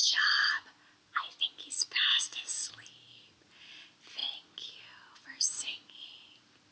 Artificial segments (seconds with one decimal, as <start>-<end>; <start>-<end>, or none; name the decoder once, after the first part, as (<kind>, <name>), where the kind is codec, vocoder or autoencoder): 2.1-2.7 (vocoder, WaveNeXt)